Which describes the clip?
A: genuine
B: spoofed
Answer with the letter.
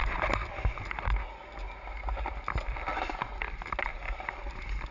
A